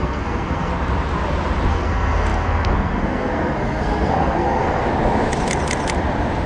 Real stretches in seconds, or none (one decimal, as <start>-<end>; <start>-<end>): 0.7-1.7; 4.8-6.5